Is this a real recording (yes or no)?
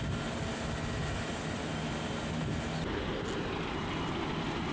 yes